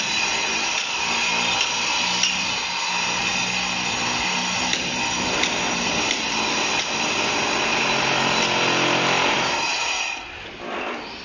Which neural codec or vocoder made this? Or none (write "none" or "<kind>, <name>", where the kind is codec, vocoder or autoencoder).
none